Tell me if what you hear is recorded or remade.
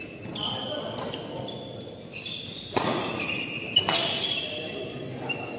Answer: recorded